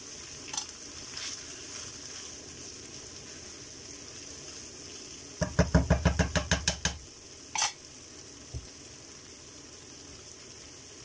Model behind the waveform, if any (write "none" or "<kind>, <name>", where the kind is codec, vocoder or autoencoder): none